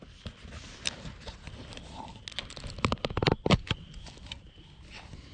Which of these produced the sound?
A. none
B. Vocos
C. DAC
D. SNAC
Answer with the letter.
A